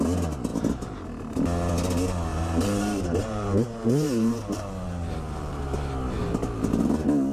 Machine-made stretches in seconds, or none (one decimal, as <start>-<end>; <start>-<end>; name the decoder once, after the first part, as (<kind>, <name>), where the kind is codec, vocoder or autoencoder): 2.3-5.6 (vocoder, BigVGAN v2)